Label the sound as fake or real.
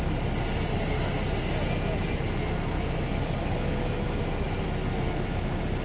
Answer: real